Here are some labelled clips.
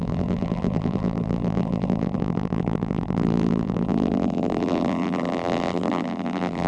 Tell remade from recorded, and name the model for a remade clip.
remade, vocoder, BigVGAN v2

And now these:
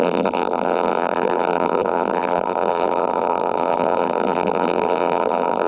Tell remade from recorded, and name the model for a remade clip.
remade, vocoder, BigVGAN v2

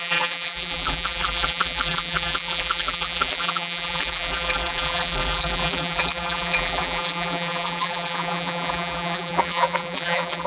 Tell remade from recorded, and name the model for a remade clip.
remade, vocoder, BigVGAN v2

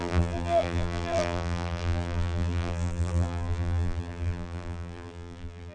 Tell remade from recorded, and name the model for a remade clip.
remade, vocoder, BigVGAN v2